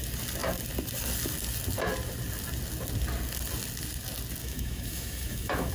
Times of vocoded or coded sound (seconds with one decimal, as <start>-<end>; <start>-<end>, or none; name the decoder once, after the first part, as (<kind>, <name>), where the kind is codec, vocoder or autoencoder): 4.4-5.7 (autoencoder, DAC-VAE)